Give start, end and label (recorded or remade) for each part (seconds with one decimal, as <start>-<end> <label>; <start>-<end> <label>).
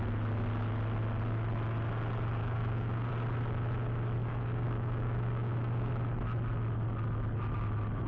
0.0-2.4 recorded; 2.4-3.1 remade; 3.1-4.2 recorded; 4.2-5.9 remade; 5.9-8.1 recorded